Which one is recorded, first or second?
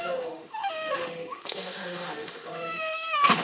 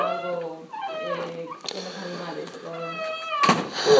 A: second